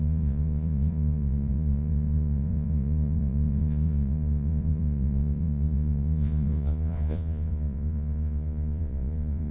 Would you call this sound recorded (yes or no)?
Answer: no